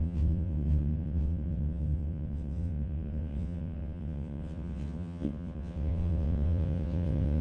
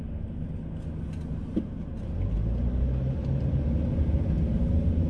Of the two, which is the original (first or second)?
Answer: second